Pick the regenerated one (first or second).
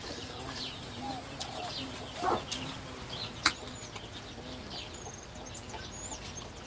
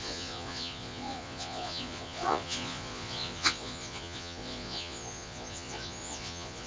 second